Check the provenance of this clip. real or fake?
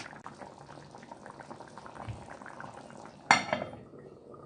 real